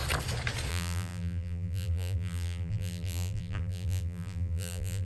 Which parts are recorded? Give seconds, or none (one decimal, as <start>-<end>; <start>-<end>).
0.0-0.7